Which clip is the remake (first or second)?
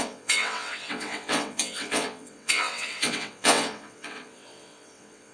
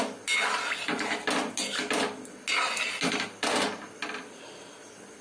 first